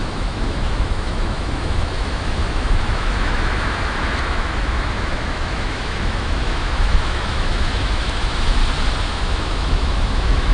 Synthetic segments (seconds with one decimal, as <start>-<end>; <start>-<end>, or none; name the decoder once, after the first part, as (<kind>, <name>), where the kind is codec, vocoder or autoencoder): 0.0-8.6 (autoencoder, DAC-VAE); 9.1-10.5